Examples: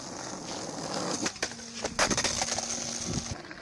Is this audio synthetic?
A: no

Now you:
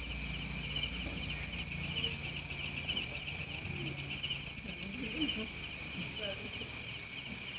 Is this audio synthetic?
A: no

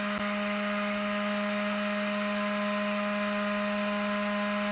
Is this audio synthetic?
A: no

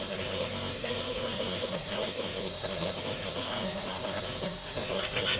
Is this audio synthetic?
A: yes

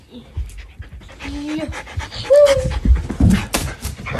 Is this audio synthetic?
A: no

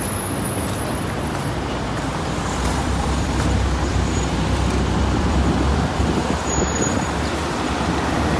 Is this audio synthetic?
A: yes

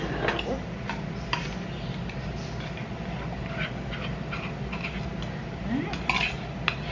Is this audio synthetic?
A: no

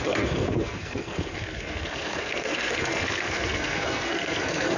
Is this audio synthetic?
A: yes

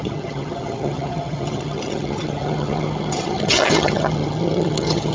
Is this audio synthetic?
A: yes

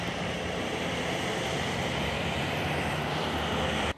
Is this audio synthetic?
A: yes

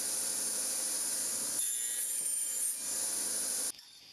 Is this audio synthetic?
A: no